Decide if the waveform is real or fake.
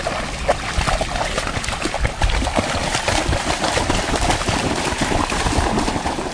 real